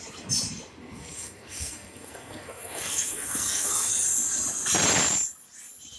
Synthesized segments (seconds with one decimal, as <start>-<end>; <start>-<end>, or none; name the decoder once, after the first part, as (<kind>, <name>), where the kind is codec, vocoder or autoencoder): 0.8-3.9 (codec, SNAC)